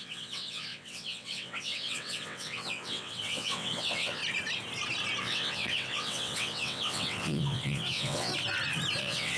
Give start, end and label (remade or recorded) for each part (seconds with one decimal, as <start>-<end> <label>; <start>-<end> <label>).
0.0-4.2 remade; 4.2-5.2 recorded; 5.2-8.3 remade; 8.3-9.0 recorded; 9.0-9.4 remade